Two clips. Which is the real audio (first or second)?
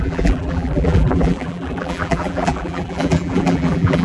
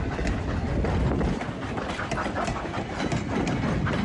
second